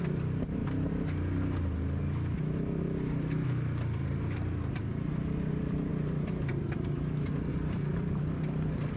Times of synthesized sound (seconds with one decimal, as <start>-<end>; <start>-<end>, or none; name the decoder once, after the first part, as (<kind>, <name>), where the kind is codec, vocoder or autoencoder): 0.0-0.6 (vocoder, BigVGAN v2); 5.5-5.9; 7.5-9.0